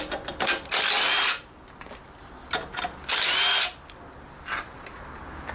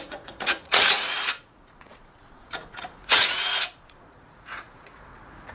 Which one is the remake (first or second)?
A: second